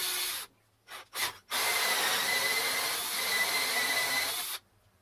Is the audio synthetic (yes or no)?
no